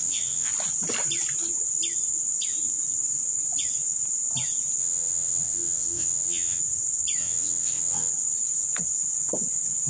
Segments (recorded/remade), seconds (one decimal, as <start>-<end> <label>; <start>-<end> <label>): 0.0-0.5 remade; 0.5-4.8 recorded; 4.8-6.6 remade; 6.6-7.2 recorded; 7.2-8.1 remade; 8.1-9.9 recorded